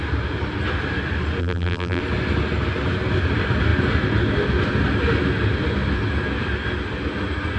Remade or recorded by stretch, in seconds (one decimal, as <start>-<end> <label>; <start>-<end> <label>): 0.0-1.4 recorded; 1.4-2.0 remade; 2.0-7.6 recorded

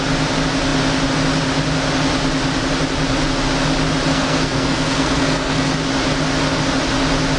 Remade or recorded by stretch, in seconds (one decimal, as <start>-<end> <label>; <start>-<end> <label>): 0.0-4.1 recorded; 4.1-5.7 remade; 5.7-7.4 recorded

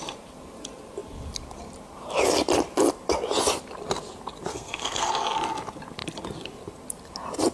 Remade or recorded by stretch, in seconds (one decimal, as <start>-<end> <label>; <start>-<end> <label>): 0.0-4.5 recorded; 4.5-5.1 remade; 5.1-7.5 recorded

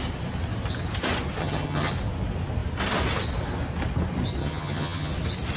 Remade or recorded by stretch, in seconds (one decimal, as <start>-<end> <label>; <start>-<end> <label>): 0.0-1.4 recorded; 1.4-1.9 remade; 1.9-4.4 recorded; 4.4-5.1 remade; 5.1-5.6 recorded

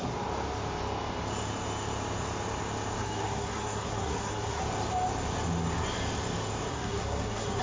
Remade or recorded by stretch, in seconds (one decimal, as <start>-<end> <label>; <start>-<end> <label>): 0.0-3.0 recorded; 3.0-4.6 remade; 4.6-6.7 recorded; 6.7-7.6 remade

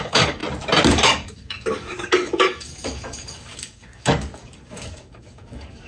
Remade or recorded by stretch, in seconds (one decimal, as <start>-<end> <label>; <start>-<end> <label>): 0.0-0.4 remade; 0.4-0.9 recorded; 0.9-5.9 remade

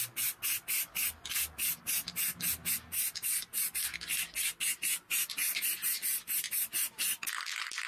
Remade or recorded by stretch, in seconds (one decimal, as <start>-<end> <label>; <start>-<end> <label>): 0.0-7.9 recorded